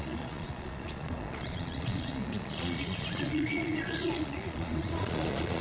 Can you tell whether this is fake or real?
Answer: fake